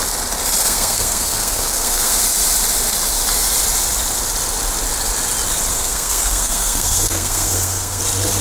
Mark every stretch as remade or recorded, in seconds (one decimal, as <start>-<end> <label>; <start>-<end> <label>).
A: 0.0-0.6 recorded; 0.6-2.2 remade; 2.2-5.7 recorded; 5.7-8.0 remade; 8.0-8.4 recorded